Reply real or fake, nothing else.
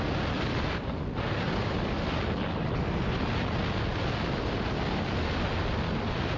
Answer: real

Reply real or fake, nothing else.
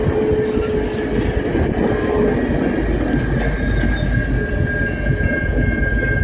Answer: real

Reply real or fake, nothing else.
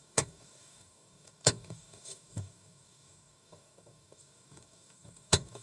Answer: fake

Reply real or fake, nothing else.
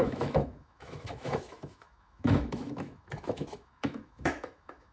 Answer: fake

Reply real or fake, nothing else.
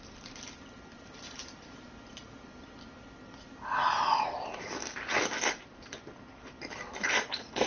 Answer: fake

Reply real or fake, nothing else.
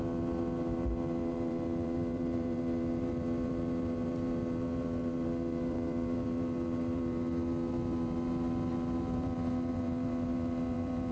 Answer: fake